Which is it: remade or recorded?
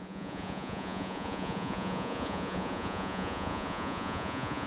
remade